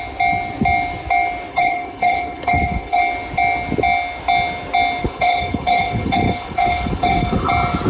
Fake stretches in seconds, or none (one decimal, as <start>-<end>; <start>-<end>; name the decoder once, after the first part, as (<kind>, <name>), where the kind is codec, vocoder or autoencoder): 1.5-3.0 (codec, HILCodec); 5.0-7.5